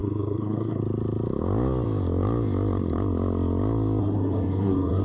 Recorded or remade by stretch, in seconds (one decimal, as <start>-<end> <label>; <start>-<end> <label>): 0.0-0.8 remade; 0.8-4.0 recorded; 4.0-5.0 remade